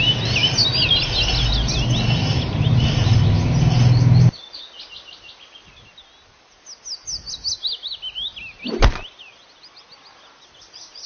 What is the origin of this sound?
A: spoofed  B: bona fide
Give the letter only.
B